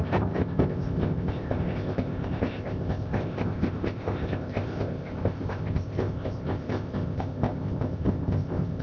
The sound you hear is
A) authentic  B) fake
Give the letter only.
B